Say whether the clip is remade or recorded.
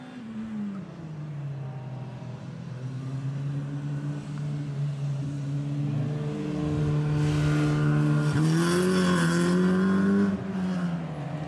recorded